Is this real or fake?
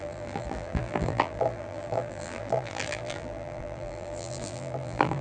fake